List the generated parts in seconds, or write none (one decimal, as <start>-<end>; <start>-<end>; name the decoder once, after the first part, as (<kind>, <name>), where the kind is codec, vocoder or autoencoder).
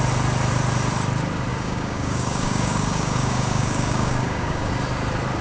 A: 1.5-4.7 (codec, DAC)